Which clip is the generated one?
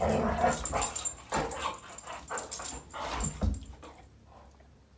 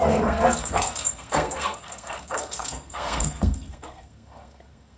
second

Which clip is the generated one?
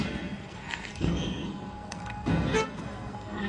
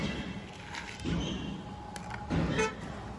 first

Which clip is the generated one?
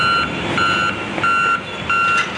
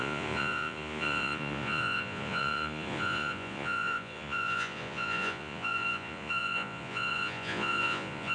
second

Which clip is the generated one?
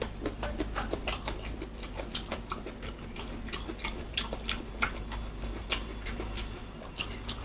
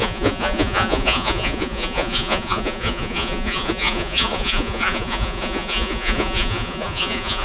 second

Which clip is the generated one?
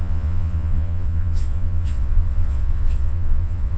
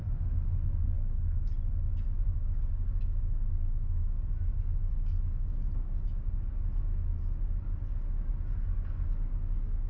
first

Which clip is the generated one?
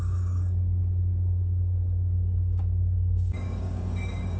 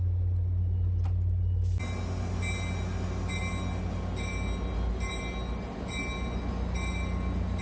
first